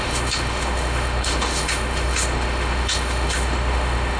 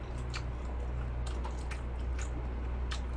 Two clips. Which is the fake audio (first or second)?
first